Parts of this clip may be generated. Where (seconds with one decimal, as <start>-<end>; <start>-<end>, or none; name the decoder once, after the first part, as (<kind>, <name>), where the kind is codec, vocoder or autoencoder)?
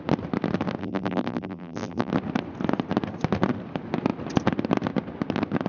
0.8-2.1 (vocoder, BigVGAN v2)